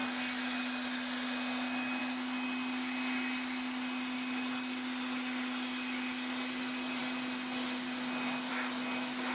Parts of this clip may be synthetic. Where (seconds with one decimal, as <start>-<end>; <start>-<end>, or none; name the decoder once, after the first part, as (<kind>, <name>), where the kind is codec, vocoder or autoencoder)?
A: none